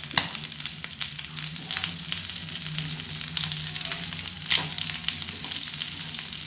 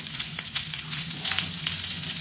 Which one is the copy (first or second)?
second